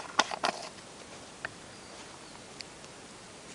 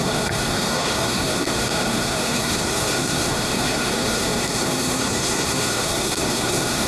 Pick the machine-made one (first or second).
second